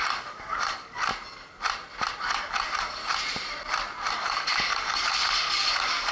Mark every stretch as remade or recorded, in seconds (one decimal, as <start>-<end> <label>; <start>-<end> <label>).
0.0-1.1 remade; 1.1-2.2 recorded; 2.2-3.0 remade; 3.0-4.1 recorded; 4.1-6.1 remade